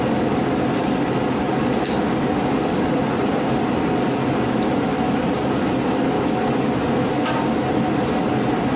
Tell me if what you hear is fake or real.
real